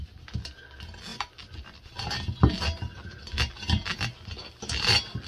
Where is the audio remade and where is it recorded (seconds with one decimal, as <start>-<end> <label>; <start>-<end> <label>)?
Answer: 0.0-5.3 recorded